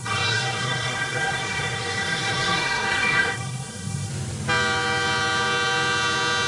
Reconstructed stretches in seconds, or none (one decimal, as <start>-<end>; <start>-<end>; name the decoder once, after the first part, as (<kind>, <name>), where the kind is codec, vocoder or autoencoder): 0.0-4.1 (codec, SNAC)